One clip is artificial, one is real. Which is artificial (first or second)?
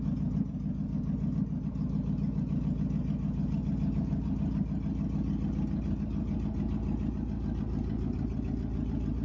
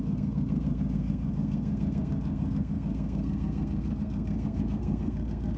second